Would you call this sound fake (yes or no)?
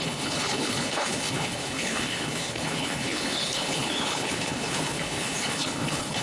yes